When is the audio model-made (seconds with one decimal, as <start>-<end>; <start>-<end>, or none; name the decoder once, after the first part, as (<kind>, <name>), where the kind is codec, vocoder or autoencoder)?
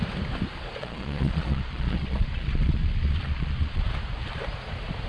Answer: 0.8-3.9 (vocoder, Vocos)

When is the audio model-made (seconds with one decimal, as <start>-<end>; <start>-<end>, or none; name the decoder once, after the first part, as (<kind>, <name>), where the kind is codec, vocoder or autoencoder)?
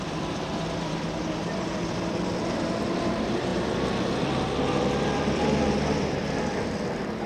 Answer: 0.0-7.3 (vocoder, BigVGAN v2)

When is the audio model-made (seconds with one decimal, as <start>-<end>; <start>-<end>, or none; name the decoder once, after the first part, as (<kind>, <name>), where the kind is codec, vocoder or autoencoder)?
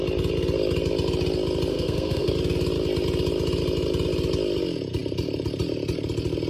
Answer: 1.7-2.3 (codec, SNAC)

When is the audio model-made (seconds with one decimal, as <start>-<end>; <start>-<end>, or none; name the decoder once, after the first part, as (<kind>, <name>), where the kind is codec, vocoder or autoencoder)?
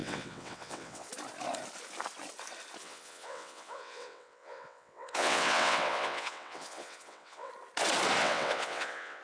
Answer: 0.0-1.1 (vocoder, WaveNeXt); 2.8-7.5; 8.2-9.2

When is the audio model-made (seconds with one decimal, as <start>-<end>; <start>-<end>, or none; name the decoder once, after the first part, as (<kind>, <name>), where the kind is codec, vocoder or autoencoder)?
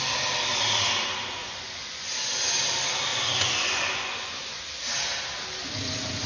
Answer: 1.4-2.6 (vocoder, Vocos); 3.1-4.6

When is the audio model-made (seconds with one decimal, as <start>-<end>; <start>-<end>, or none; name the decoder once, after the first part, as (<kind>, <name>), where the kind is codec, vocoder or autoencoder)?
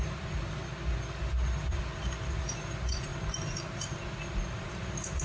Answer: 0.0-0.6 (vocoder, BigVGAN v2); 1.2-3.1; 4.6-5.2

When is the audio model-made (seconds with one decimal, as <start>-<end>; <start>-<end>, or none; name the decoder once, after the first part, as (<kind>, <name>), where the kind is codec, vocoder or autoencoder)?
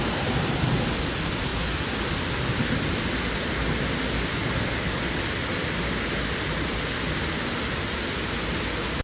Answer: none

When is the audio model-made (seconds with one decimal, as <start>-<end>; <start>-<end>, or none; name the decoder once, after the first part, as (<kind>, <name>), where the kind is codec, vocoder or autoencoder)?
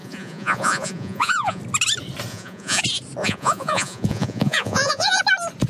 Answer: 0.0-1.6 (vocoder, Vocos); 2.3-2.8; 3.2-5.2